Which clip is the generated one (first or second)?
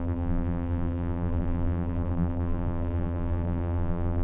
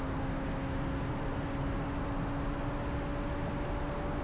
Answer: first